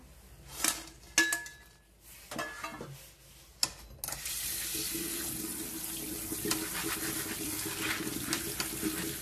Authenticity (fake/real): real